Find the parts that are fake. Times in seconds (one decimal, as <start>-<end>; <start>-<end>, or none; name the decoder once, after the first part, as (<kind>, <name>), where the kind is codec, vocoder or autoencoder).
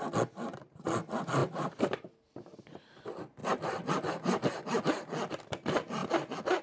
1.4-2.0 (vocoder, BigVGAN v2); 3.4-4.1; 6.0-6.6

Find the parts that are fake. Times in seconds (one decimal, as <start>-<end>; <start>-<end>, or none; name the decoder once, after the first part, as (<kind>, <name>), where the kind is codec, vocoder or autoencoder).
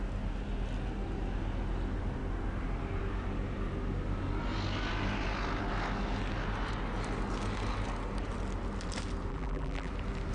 9.3-9.9 (vocoder, BigVGAN v2)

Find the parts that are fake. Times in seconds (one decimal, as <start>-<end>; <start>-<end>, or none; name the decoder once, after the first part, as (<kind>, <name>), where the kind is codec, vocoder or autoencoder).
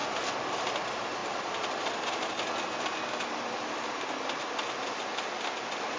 none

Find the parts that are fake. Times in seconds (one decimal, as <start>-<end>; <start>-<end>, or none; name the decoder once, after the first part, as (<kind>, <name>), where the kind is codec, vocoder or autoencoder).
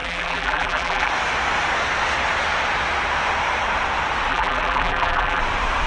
0.0-1.1 (vocoder, BigVGAN v2); 4.3-5.4